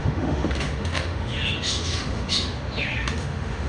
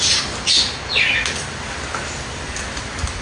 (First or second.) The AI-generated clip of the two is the first